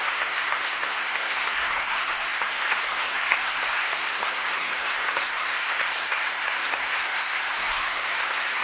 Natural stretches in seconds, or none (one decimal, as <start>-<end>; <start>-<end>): none